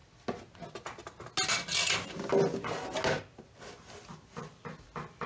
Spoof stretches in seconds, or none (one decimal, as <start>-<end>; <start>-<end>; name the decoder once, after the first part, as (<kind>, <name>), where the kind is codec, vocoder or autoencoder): 4.1-5.3 (vocoder, BigVGAN v2)